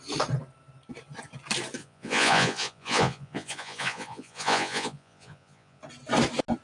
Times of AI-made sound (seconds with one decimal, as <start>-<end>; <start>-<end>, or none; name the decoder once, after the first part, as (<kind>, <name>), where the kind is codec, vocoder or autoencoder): 1.8-5.8 (vocoder, Vocos)